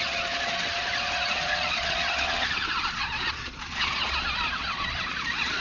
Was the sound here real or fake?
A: fake